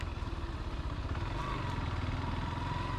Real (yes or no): yes